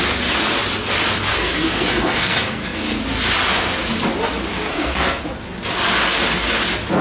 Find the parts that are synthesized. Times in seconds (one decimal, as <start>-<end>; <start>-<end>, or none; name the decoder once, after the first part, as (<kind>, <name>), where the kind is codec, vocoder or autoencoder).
1.3-3.0 (codec, SNAC); 4.5-5.2